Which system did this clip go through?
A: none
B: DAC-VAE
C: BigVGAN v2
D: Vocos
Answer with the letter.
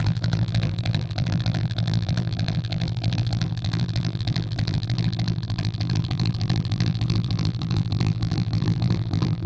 C